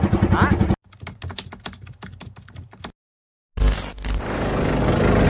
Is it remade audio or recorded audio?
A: recorded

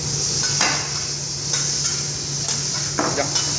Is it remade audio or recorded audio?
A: recorded